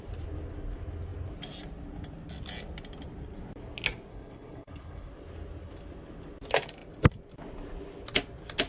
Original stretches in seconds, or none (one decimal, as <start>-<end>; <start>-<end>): 0.0-4.1; 5.1-8.7